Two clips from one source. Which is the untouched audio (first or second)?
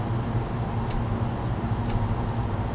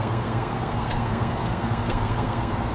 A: first